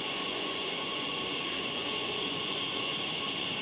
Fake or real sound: fake